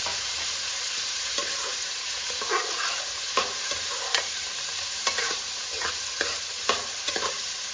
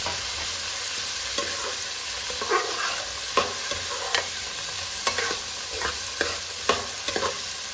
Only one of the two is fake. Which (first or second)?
first